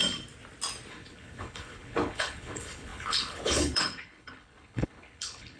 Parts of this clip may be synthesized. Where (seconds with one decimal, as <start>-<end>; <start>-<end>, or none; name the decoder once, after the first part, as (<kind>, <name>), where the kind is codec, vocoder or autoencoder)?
0.9-5.6 (codec, HILCodec)